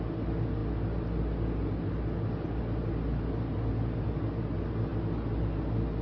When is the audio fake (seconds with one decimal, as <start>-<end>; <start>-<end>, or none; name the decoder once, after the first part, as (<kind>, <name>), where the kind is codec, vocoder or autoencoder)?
none